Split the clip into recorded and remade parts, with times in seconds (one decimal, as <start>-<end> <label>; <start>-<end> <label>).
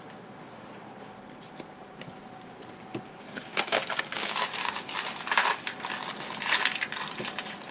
0.0-3.5 recorded; 3.5-4.9 remade; 4.9-7.7 recorded